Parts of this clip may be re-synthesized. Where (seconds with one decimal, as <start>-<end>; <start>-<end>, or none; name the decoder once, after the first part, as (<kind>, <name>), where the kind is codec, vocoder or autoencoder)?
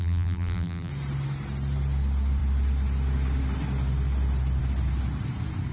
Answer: 0.0-0.9 (vocoder, BigVGAN v2)